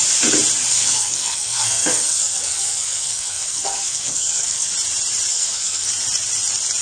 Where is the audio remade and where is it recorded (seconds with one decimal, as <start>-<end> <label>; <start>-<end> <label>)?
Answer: 0.0-0.7 recorded; 0.7-4.7 remade; 4.7-5.3 recorded; 5.3-5.9 remade; 5.9-6.8 recorded